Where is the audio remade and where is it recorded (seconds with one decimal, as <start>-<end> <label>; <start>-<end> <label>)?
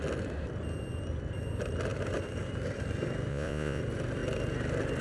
0.0-3.3 recorded; 3.3-3.8 remade; 3.8-5.0 recorded